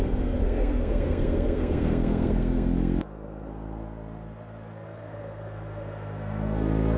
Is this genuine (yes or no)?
no